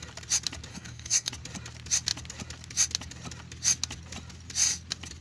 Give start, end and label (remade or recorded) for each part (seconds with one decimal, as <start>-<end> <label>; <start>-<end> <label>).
0.0-0.7 recorded; 0.7-1.3 remade; 1.3-5.2 recorded